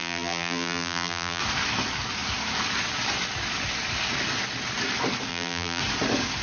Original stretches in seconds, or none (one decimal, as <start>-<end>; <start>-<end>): 1.4-5.3; 5.8-6.4